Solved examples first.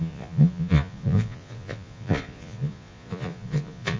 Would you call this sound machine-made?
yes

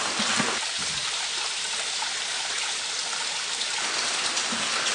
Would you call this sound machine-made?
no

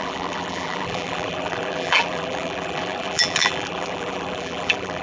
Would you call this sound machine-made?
yes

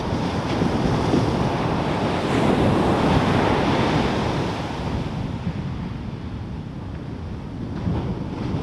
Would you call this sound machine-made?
no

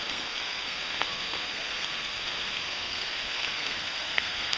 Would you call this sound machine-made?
yes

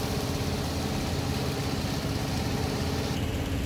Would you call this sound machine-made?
no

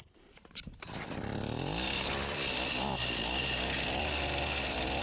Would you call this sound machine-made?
yes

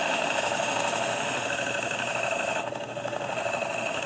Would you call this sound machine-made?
yes